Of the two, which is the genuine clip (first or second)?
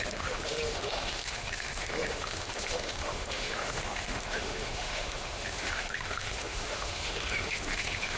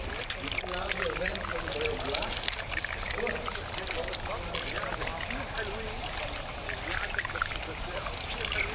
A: second